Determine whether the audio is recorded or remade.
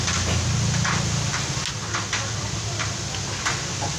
recorded